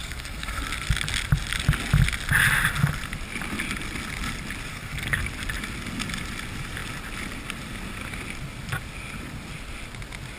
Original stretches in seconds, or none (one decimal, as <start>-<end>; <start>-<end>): 0.6-4.7; 5.2-10.4